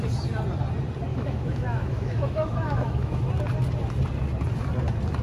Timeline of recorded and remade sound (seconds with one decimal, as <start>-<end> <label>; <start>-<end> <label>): 0.0-1.1 recorded; 1.1-3.3 remade; 3.3-5.2 recorded